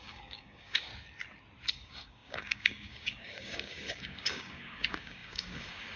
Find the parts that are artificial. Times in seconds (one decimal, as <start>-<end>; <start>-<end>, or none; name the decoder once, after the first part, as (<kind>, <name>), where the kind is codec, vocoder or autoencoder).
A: 0.0-0.9 (codec, DAC); 1.7-6.0